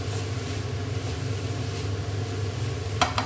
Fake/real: real